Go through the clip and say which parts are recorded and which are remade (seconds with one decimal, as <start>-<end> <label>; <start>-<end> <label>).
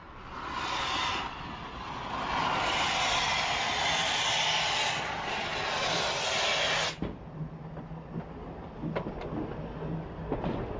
0.0-10.8 recorded